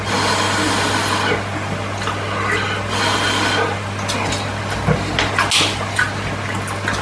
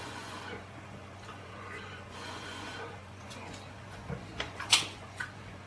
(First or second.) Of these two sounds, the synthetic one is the second